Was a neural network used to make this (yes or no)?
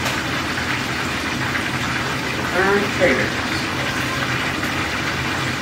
no